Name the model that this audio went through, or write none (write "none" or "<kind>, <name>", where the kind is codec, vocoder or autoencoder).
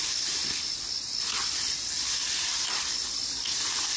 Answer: none